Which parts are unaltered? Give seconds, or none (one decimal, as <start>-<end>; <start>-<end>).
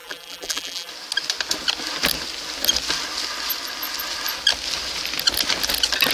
0.9-6.1